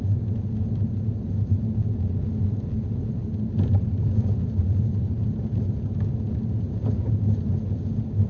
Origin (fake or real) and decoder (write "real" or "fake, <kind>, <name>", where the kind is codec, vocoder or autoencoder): real